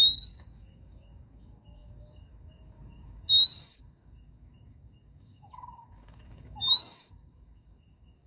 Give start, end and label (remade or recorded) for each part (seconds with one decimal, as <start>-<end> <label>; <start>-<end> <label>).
0.0-8.3 remade